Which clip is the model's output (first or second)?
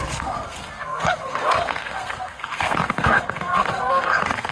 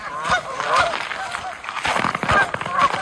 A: first